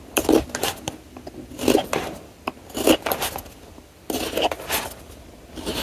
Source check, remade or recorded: recorded